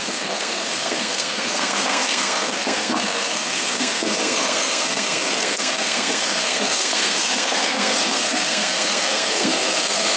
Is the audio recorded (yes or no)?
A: no